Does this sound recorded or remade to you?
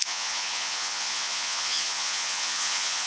remade